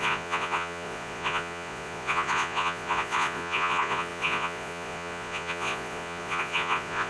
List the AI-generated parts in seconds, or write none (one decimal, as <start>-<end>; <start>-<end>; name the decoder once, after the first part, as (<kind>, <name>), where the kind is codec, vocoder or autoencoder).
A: 0.0-7.1 (vocoder, Vocos)